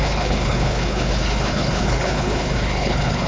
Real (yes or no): no